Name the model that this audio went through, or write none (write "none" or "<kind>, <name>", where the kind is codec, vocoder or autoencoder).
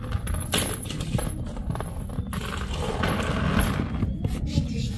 none